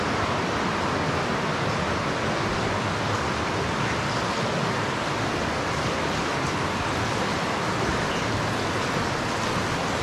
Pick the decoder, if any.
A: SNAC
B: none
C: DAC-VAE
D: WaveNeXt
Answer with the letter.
B